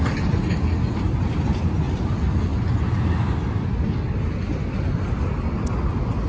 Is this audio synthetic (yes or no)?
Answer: no